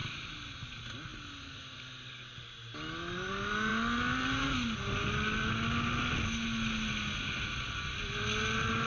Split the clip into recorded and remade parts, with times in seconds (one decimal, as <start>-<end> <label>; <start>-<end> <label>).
0.0-8.9 recorded